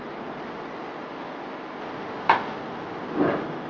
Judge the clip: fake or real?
real